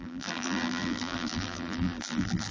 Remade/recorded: remade